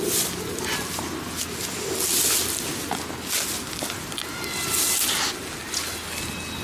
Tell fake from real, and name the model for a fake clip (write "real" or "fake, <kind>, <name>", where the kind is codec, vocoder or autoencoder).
real